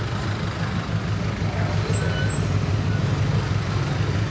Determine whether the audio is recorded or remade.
recorded